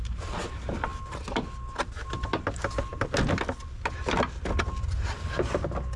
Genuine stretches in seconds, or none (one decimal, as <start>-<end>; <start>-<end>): 0.0-6.0